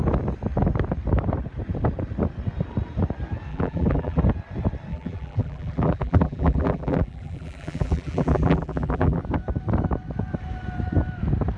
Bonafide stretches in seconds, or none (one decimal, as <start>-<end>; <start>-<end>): 0.0-3.5; 4.2-4.9; 9.2-11.6